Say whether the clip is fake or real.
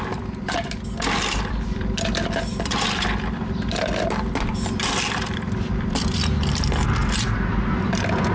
fake